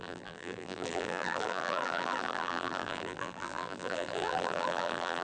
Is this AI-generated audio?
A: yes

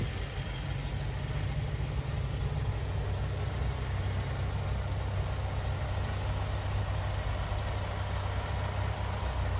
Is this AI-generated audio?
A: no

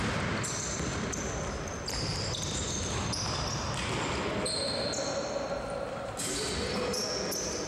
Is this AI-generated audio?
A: no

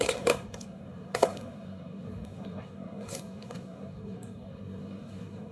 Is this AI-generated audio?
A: yes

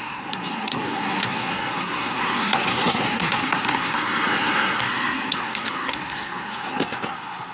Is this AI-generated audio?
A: yes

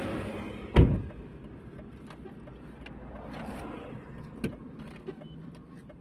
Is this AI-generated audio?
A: no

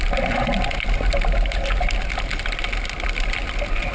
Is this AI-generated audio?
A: no